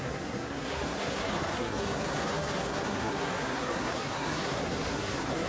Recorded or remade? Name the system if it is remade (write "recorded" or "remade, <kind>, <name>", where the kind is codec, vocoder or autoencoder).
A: remade, codec, SNAC